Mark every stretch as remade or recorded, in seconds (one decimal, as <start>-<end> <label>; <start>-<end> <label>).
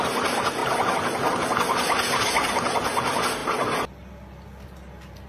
0.0-5.3 recorded